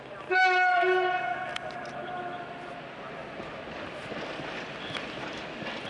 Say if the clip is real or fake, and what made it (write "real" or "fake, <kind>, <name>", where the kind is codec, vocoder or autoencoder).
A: real